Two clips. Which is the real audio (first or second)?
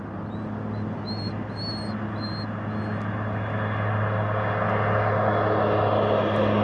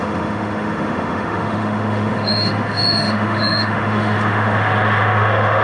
first